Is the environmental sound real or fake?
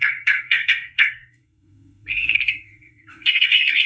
fake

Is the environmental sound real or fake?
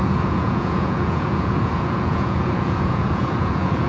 fake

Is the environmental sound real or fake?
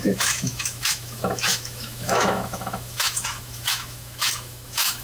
fake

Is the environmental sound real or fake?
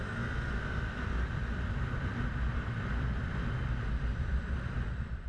fake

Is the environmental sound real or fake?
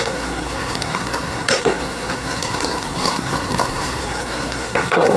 fake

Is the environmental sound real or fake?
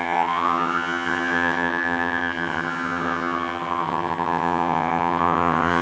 fake